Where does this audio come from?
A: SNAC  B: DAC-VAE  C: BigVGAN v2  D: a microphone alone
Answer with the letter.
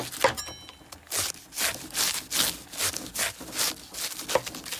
D